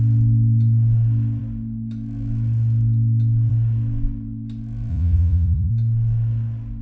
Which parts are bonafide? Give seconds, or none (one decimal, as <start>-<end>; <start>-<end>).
0.0-4.9; 5.7-6.8